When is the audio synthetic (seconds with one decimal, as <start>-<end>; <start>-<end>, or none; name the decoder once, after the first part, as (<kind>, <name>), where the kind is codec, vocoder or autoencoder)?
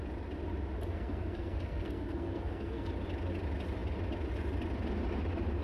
0.9-2.9 (codec, SNAC)